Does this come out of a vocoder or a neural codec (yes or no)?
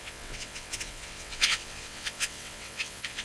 yes